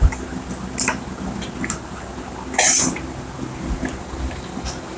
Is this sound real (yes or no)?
yes